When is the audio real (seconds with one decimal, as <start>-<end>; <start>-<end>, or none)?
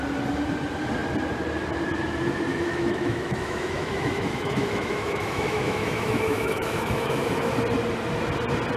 0.0-2.5; 7.5-8.8